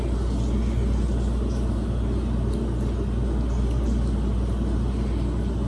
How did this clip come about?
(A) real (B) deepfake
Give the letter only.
A